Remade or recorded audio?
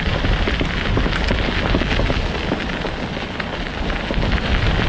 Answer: recorded